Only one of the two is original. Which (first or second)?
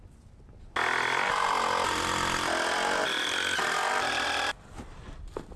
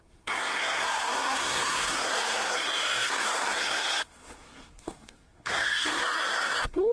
first